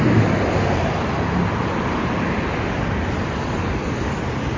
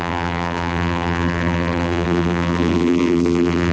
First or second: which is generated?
second